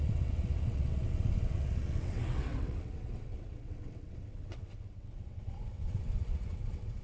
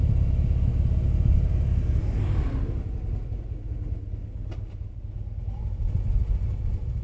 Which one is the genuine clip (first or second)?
second